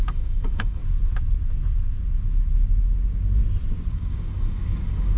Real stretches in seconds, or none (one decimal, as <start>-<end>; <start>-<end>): 0.8-3.9